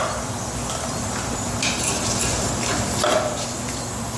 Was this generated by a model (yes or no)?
no